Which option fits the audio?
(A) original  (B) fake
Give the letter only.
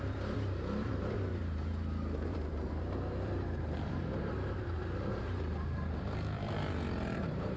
B